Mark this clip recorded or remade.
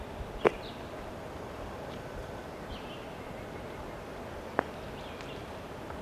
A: recorded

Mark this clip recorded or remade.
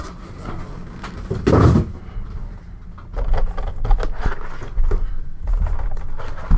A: recorded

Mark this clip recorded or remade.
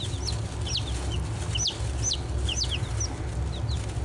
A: recorded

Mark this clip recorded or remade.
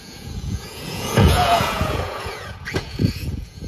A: remade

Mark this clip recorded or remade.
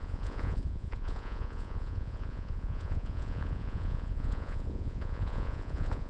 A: remade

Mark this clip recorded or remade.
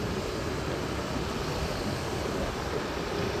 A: recorded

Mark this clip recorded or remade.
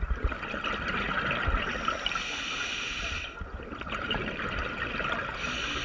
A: recorded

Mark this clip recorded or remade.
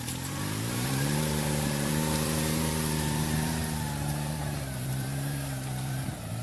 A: remade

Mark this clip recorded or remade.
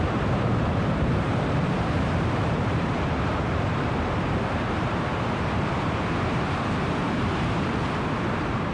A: remade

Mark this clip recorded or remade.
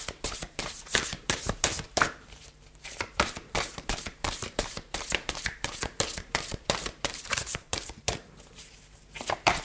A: remade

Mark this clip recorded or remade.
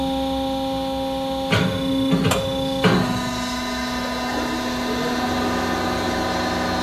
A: recorded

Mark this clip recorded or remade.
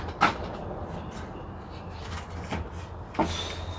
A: recorded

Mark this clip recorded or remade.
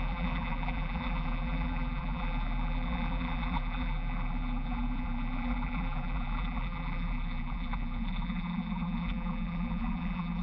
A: remade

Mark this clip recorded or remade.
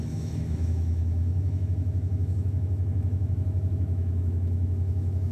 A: remade